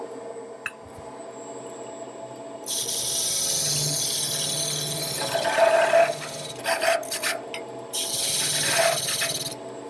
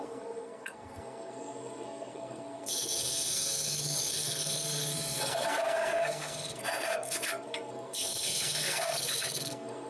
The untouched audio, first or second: first